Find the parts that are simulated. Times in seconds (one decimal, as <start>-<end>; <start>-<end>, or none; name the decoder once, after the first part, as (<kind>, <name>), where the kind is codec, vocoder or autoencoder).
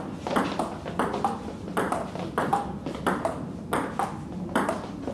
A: none